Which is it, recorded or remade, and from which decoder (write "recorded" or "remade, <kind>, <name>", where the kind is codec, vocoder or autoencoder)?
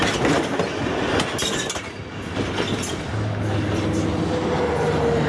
recorded